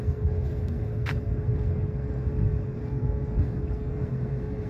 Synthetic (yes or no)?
yes